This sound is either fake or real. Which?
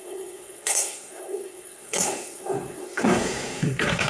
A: fake